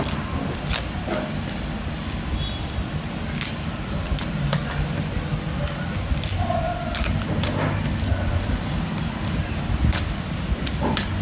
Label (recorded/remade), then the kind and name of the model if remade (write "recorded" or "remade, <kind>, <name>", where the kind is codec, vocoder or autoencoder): recorded